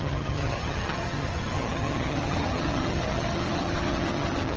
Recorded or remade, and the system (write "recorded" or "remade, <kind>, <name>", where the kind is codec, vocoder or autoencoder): remade, vocoder, HiFi-GAN